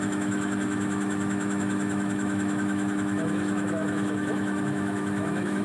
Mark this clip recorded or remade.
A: remade